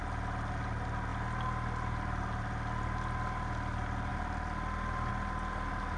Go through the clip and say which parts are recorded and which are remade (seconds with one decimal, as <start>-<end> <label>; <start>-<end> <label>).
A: 0.0-6.0 recorded